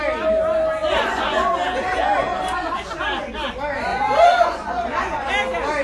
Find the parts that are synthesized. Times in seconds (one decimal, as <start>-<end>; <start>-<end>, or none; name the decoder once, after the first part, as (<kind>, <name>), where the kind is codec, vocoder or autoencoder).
0.8-1.5 (vocoder, Vocos); 3.9-5.3